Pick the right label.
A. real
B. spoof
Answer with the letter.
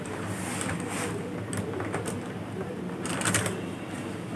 A